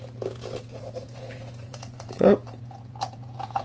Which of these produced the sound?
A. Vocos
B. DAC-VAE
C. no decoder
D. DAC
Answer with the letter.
A